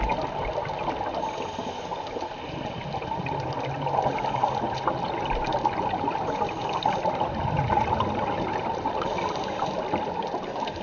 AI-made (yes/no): no